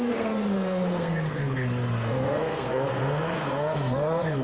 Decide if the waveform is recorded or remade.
remade